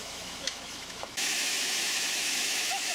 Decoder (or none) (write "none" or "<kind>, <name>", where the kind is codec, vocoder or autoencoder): autoencoder, DAC-VAE